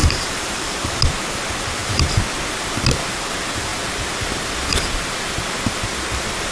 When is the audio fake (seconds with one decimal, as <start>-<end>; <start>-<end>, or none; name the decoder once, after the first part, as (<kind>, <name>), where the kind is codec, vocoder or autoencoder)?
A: 0.0-1.0 (vocoder, BigVGAN v2)